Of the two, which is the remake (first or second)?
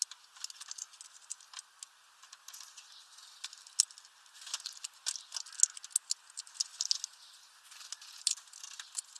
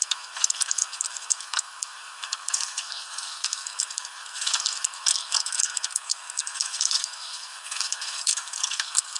second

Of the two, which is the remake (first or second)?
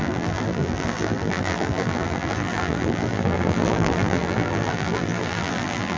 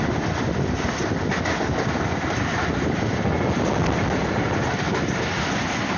first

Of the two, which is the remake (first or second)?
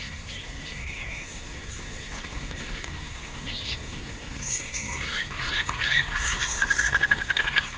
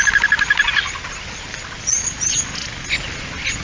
first